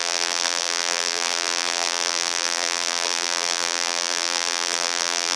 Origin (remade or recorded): remade